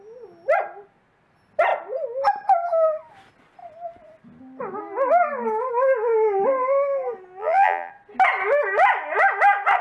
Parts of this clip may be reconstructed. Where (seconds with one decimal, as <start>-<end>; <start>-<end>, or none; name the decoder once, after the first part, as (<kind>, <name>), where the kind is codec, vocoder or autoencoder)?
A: 7.4-7.9 (vocoder, BigVGAN v2)